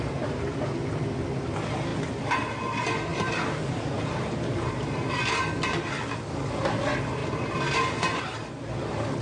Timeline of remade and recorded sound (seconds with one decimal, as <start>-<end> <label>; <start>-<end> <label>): 0.0-3.1 recorded; 3.1-5.1 remade; 5.1-7.2 recorded; 7.2-8.2 remade; 8.2-9.2 recorded